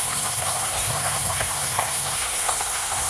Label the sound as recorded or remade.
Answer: remade